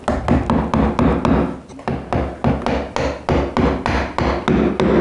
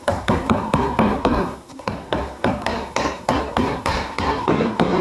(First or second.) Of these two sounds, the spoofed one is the second